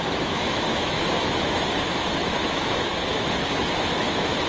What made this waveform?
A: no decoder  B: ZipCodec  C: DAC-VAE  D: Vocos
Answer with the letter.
C